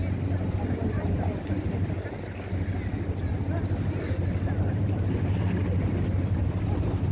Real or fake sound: real